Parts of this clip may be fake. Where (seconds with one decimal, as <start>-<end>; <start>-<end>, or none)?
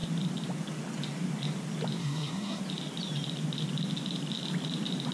2.0-2.6